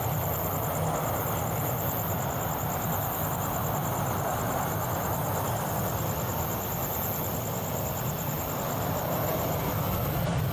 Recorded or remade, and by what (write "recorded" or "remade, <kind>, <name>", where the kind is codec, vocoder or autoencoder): recorded